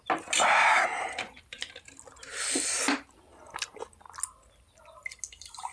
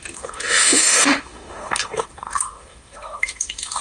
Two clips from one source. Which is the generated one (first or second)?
second